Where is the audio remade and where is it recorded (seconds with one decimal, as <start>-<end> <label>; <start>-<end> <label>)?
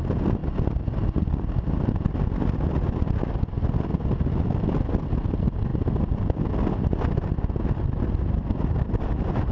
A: 0.0-9.5 recorded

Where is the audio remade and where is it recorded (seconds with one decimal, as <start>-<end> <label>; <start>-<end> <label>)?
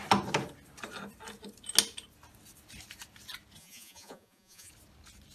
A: 0.0-3.6 recorded; 3.6-4.7 remade; 4.7-5.3 recorded